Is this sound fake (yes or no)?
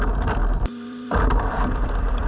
yes